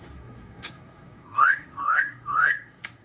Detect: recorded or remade remade